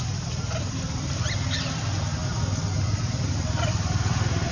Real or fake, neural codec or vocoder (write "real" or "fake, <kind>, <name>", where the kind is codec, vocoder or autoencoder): real